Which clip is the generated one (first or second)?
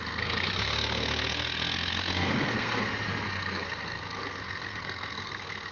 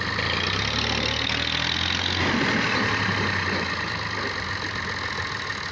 first